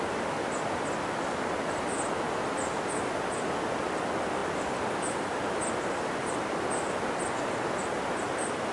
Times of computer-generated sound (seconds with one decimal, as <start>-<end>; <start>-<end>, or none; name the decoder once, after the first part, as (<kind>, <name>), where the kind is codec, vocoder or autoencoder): none